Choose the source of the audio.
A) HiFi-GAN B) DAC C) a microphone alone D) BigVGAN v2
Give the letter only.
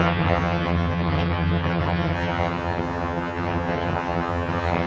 A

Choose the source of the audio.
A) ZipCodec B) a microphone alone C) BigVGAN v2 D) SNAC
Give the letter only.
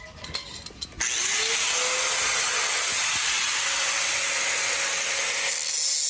B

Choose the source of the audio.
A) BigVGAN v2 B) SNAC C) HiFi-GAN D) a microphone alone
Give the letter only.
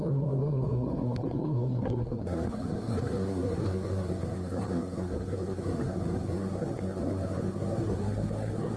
B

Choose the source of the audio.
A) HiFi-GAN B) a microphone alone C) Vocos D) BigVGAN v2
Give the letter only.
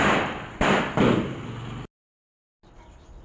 B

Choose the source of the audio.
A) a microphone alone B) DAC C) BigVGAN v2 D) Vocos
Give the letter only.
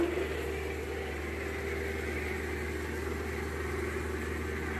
A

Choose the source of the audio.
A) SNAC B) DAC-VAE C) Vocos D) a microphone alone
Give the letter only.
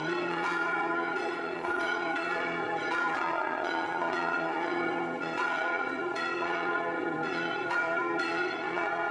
C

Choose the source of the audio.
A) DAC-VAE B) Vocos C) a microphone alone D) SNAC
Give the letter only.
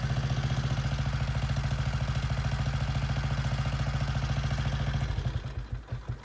C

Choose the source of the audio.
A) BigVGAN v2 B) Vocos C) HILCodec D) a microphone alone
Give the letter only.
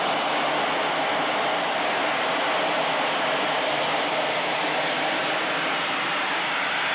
D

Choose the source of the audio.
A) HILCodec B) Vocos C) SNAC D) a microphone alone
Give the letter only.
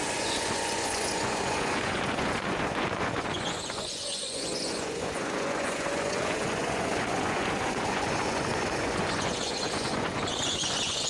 B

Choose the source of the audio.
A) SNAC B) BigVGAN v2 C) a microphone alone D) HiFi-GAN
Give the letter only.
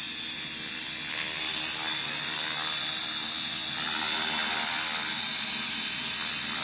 C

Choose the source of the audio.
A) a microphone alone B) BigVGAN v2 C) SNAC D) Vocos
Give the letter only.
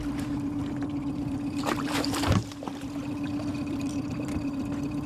B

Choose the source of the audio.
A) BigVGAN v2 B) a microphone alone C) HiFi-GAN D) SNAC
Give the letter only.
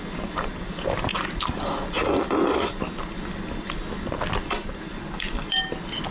B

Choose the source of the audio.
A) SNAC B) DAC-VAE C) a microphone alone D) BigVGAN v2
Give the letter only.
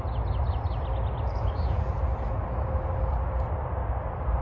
C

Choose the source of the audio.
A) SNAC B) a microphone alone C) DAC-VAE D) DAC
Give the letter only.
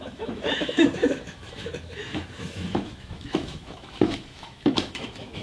C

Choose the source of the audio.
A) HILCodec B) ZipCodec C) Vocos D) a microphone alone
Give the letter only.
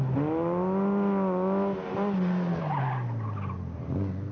D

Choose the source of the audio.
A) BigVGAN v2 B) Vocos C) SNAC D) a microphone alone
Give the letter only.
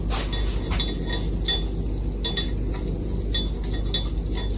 D